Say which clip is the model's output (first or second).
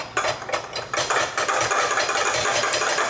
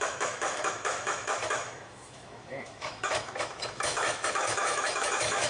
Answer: second